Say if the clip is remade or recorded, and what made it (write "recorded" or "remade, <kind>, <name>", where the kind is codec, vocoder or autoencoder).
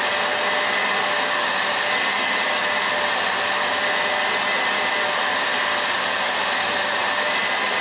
recorded